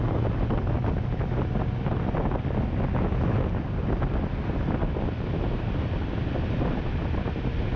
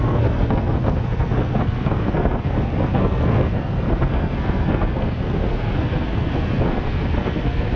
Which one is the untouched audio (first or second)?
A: first